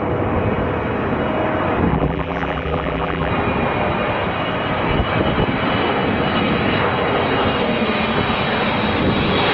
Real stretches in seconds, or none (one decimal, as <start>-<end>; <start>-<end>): 0.0-1.9; 3.3-9.5